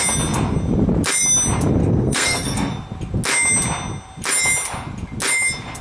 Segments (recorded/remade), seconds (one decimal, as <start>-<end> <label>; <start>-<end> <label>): 0.0-1.8 recorded; 1.8-2.7 remade; 2.7-5.8 recorded